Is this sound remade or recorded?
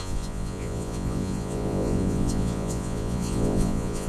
remade